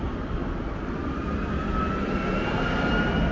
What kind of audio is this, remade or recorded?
recorded